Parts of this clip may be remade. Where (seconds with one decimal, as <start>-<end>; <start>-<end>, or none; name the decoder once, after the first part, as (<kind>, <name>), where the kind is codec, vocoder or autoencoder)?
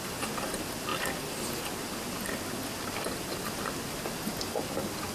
none